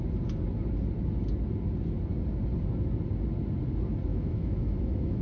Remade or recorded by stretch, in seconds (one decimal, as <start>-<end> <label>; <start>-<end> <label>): 0.0-4.1 recorded; 4.1-5.2 remade